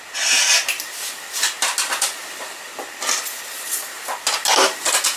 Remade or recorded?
recorded